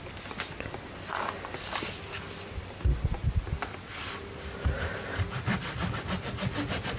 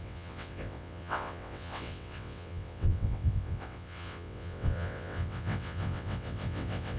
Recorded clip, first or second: first